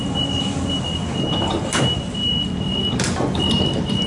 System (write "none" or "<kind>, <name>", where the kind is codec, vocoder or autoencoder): none